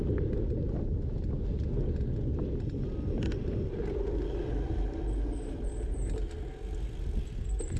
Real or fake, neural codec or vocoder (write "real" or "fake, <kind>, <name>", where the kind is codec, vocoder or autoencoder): real